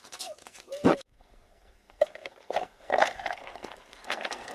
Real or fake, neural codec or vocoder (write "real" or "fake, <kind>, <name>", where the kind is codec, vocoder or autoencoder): fake, codec, SNAC